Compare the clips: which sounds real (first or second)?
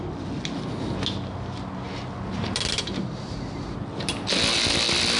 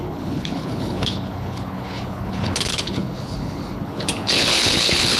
first